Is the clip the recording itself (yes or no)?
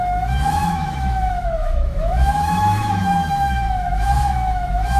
no